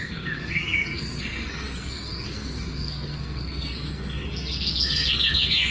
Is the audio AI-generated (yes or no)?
yes